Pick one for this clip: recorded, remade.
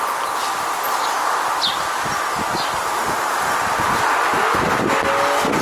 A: recorded